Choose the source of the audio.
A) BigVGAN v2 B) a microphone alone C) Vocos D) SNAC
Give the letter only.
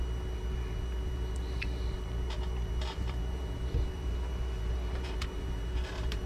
A